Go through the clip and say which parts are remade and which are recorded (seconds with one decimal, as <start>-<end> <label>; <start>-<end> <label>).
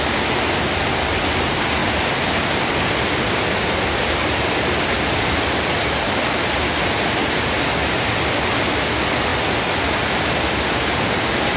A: 0.0-11.6 recorded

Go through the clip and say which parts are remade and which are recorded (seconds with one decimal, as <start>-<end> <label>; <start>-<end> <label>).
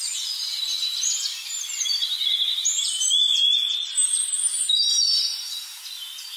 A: 0.0-0.7 recorded; 0.7-1.6 remade; 1.6-2.5 recorded; 2.5-5.1 remade; 5.1-6.4 recorded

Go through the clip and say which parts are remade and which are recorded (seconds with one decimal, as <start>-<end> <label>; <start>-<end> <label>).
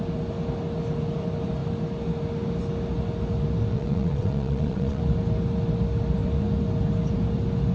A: 0.0-3.7 recorded; 3.7-5.0 remade; 5.0-7.7 recorded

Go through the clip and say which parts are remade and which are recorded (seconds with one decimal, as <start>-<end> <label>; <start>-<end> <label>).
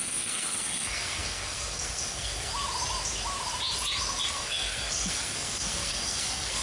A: 0.0-2.5 remade; 2.5-4.3 recorded; 4.3-6.6 remade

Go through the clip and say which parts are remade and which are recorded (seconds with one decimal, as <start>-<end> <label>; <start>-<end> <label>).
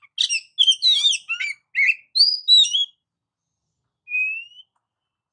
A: 0.0-5.3 recorded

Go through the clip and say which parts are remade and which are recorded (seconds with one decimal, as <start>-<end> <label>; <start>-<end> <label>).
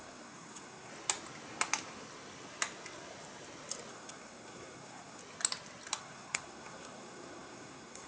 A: 0.0-0.9 remade; 0.9-3.9 recorded; 3.9-5.2 remade; 5.2-6.0 recorded; 6.0-8.1 remade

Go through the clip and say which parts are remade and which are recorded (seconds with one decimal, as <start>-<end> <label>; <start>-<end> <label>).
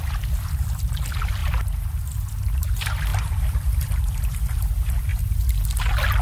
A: 0.0-1.4 recorded; 1.4-2.0 remade; 2.0-3.1 recorded; 3.1-3.9 remade; 3.9-5.1 recorded; 5.1-5.8 remade; 5.8-6.2 recorded